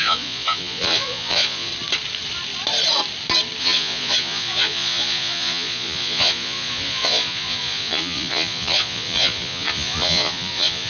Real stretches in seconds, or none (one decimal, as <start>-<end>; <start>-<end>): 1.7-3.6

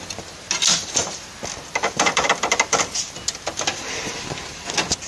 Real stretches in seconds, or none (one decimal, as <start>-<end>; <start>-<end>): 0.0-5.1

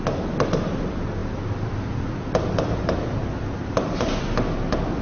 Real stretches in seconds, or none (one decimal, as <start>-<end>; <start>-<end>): 0.0-5.0